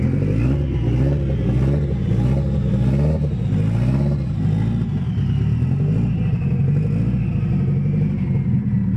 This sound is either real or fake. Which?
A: real